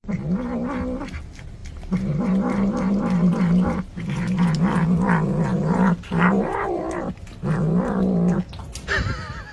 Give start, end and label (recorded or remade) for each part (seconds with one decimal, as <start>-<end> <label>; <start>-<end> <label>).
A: 0.0-1.6 recorded; 1.6-4.5 remade; 4.5-5.5 recorded; 5.5-6.8 remade; 6.8-9.5 recorded